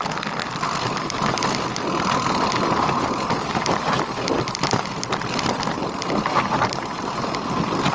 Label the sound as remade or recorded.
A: recorded